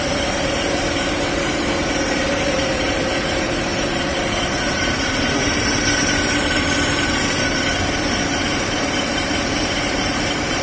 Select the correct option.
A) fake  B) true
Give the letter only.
A